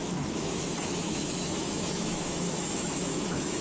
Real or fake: fake